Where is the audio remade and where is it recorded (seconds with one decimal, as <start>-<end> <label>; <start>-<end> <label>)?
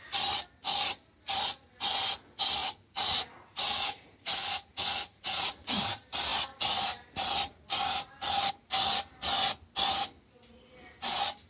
0.0-2.6 recorded; 2.6-5.8 remade; 5.8-11.5 recorded